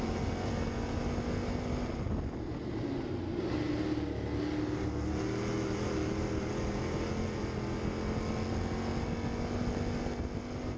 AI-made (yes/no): no